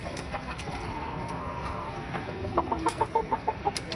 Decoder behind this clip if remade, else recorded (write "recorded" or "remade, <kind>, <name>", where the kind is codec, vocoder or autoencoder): remade, codec, SNAC